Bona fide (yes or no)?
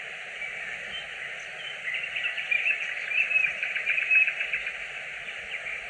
yes